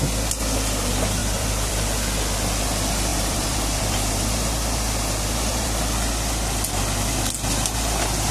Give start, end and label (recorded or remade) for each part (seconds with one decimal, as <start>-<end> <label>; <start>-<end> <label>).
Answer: 0.0-1.2 recorded; 1.2-1.7 remade; 1.7-3.1 recorded; 3.1-4.1 remade; 4.1-5.5 recorded; 5.5-6.1 remade; 6.1-8.3 recorded